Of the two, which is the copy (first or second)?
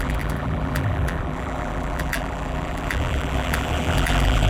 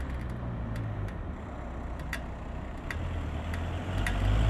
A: first